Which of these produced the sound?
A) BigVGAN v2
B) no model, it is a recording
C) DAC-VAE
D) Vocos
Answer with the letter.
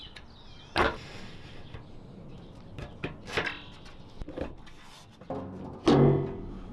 B